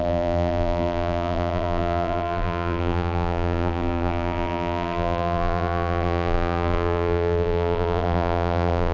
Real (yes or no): no